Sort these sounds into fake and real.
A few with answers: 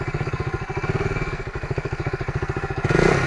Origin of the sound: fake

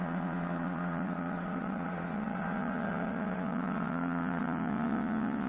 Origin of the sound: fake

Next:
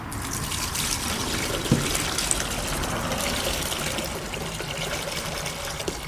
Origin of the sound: real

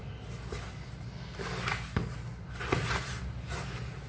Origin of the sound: real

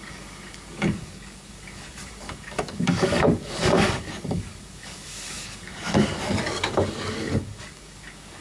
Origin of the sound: fake